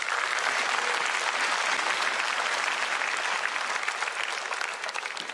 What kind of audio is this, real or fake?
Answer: real